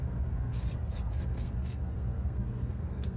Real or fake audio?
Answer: fake